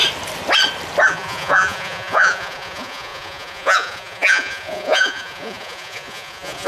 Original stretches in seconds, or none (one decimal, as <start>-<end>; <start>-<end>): 0.0-1.1

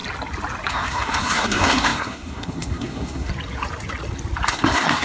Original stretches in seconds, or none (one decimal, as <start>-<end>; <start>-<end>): 0.0-0.7; 3.3-4.5

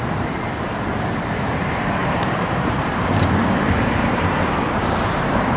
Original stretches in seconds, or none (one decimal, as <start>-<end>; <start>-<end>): none

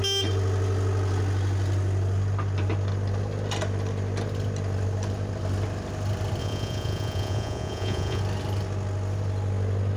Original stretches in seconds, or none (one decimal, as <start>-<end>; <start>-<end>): 0.0-6.4; 8.2-10.0

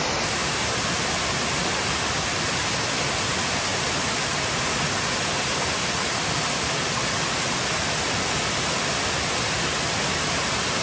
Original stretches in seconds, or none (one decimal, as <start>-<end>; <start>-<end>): 0.0-10.8